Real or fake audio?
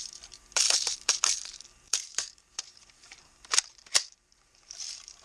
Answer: fake